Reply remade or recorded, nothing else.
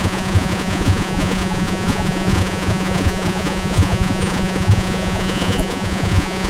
remade